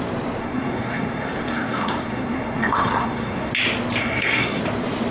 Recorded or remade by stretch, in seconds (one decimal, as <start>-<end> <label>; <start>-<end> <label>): 0.0-0.4 recorded; 0.4-3.5 remade; 3.5-4.0 recorded; 4.0-4.6 remade; 4.6-5.1 recorded